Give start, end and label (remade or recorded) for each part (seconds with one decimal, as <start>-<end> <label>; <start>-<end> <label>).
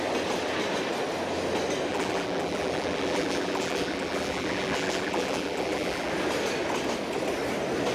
0.0-1.9 recorded; 1.9-6.1 remade; 6.1-7.9 recorded